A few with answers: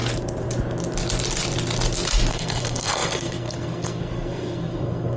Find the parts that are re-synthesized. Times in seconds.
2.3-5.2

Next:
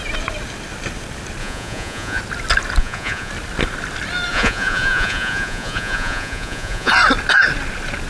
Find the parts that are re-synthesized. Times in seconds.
1.4-2.2; 2.8-3.3; 4.3-6.9

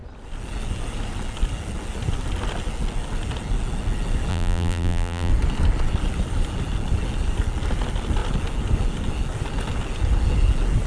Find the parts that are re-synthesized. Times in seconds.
4.3-5.3

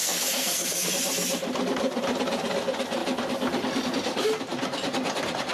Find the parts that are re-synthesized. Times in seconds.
0.0-0.9

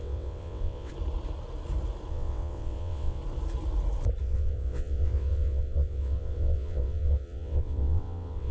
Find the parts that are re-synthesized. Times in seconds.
0.0-0.9; 2.1-3.2; 4.2-8.5